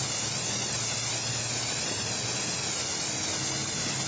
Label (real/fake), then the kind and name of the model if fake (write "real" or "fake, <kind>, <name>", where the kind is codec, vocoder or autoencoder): real